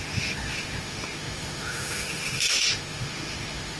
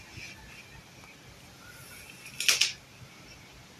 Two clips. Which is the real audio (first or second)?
second